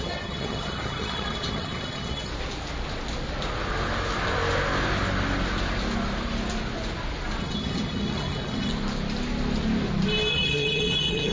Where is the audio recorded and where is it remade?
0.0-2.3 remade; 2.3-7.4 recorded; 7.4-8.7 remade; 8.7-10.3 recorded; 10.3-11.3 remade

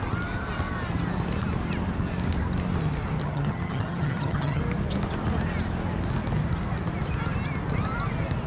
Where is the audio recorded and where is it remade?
0.0-3.2 recorded; 3.2-4.6 remade; 4.6-8.5 recorded

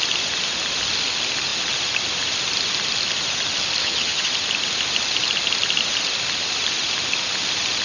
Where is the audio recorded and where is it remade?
0.0-3.8 recorded; 3.8-4.3 remade; 4.3-7.8 recorded

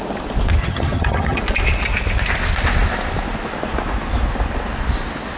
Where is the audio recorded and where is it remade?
0.0-0.6 recorded; 0.6-1.4 remade; 1.4-5.4 recorded

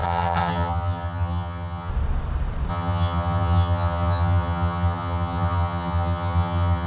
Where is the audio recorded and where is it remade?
0.0-1.9 remade; 1.9-2.7 recorded; 2.7-6.9 remade

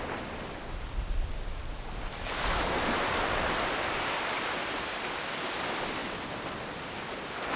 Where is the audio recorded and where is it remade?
0.0-7.6 recorded